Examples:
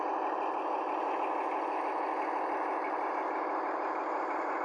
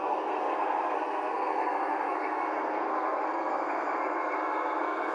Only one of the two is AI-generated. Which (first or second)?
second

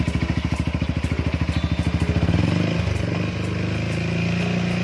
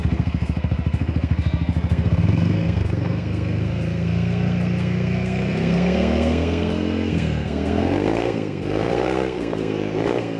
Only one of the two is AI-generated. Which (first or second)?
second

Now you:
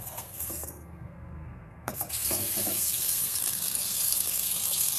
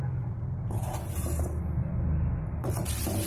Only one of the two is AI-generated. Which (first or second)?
first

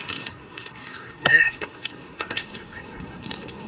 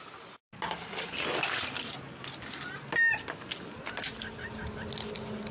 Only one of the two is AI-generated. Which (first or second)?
first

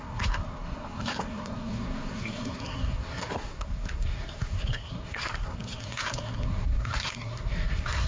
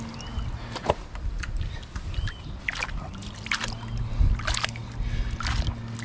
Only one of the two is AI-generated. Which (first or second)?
first